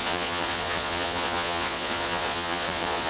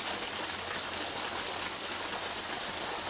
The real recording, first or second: second